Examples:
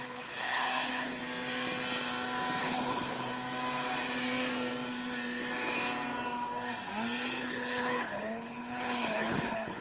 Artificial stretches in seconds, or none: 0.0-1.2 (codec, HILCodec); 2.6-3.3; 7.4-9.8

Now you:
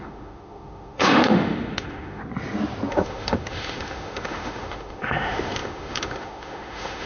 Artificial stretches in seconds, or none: 0.0-2.2 (autoencoder, DAC-VAE); 2.9-7.1

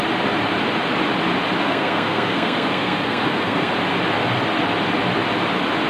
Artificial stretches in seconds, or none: 1.6-3.7 (codec, SNAC)

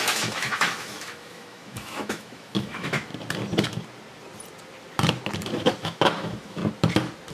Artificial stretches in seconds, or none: 0.0-3.1 (autoencoder, DAC-VAE); 5.5-6.6